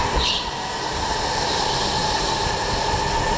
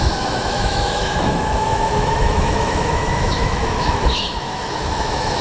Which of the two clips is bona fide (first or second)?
first